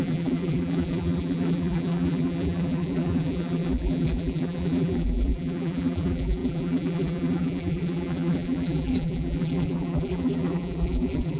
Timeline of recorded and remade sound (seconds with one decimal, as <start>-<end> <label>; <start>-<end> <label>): 0.0-11.4 remade